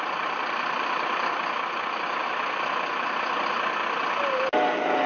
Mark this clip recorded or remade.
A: recorded